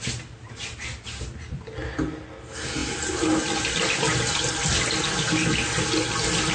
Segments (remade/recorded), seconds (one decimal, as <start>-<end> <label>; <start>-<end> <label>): 0.0-6.5 recorded